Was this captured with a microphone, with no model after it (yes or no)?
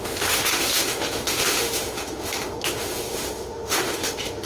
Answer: no